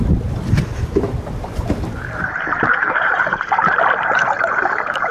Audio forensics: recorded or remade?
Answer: remade